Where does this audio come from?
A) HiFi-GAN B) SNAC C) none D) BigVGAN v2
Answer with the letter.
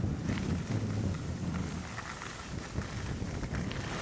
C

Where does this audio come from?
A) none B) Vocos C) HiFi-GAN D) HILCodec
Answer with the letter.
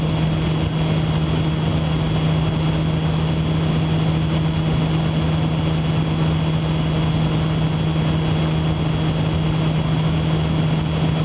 A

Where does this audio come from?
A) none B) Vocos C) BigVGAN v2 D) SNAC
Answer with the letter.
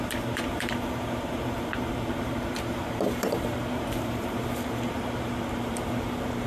C